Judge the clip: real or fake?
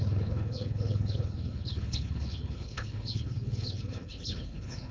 fake